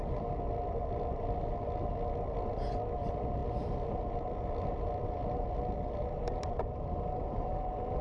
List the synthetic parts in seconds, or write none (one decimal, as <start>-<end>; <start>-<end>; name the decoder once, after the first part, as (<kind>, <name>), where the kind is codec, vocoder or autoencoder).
none